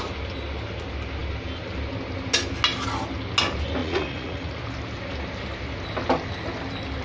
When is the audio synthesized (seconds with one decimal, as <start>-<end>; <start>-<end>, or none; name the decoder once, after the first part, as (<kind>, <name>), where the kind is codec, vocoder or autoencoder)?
3.8-4.6 (vocoder, Vocos)